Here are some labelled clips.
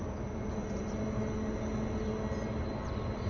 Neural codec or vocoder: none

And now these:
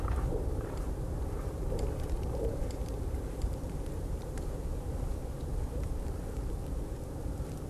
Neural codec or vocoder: vocoder, BigVGAN v2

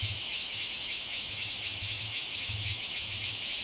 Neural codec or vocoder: autoencoder, DAC-VAE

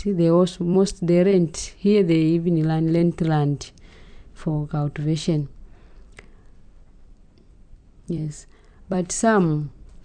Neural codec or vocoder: vocoder, BigVGAN v2